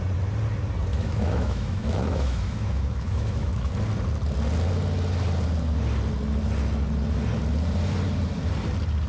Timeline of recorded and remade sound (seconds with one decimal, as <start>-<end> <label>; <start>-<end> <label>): 0.0-0.9 recorded; 0.9-3.7 remade; 3.7-9.1 recorded